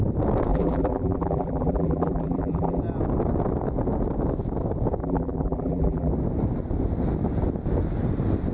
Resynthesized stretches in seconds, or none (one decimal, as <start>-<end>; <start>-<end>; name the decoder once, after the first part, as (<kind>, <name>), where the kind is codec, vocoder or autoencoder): 0.5-2.8 (vocoder, BigVGAN v2); 5.0-6.1